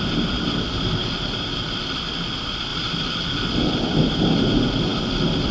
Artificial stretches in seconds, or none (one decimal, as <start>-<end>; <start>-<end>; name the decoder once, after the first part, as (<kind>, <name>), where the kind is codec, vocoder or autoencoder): none